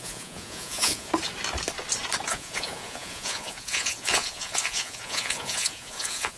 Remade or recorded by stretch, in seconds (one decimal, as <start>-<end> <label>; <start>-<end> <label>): 0.0-1.1 remade; 1.1-2.3 recorded; 2.3-6.4 remade